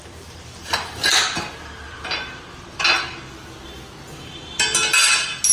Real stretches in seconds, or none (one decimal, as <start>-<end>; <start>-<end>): 0.0-5.5